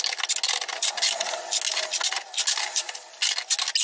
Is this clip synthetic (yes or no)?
no